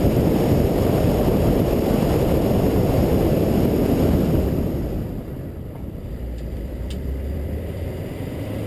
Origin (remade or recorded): remade